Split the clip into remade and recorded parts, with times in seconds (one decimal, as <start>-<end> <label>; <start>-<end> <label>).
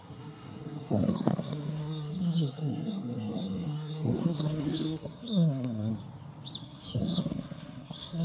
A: 0.0-5.9 remade; 5.9-6.6 recorded; 6.6-8.2 remade